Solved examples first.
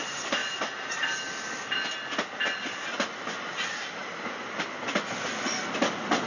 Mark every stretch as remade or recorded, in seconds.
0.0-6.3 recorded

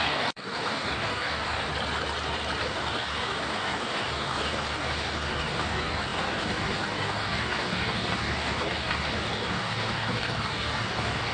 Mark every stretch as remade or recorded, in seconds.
0.0-1.7 remade; 1.7-2.6 recorded; 2.6-11.3 remade

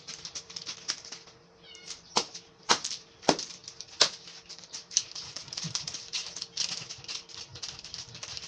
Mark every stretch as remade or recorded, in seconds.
0.0-3.6 remade; 3.6-4.5 recorded; 4.5-6.2 remade; 6.2-6.9 recorded; 6.9-7.5 remade; 7.5-8.5 recorded